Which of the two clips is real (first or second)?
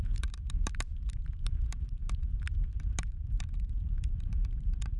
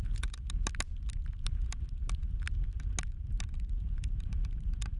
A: second